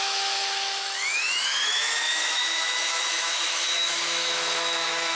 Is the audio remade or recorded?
remade